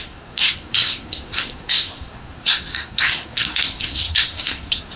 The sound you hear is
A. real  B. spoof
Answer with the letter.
B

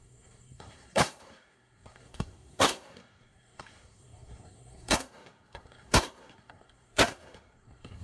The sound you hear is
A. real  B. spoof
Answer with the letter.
B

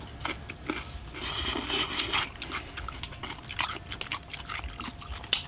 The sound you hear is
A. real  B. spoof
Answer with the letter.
A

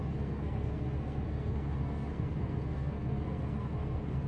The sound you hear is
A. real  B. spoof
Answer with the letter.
B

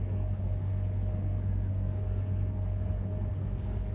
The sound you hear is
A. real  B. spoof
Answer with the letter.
B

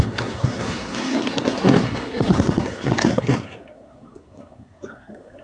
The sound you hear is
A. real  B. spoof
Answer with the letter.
B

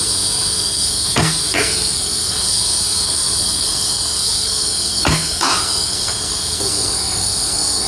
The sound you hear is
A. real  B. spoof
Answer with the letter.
B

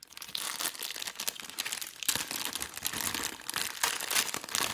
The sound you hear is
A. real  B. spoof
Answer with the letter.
A